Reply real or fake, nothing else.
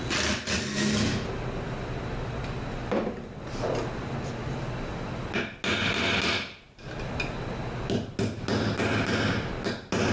real